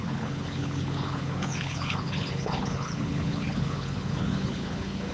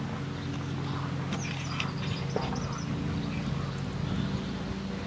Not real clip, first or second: first